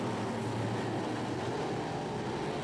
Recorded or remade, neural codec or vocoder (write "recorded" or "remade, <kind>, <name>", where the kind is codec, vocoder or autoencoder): recorded